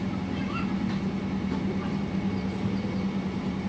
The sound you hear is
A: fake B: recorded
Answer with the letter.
B